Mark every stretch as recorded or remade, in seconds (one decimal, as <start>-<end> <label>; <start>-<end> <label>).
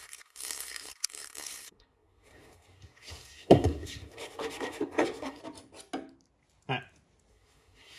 0.0-5.4 remade; 5.4-7.3 recorded; 7.3-8.0 remade